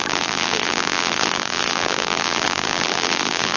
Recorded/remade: remade